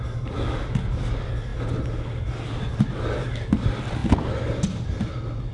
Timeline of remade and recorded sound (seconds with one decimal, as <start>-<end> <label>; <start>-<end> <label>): 0.0-5.5 recorded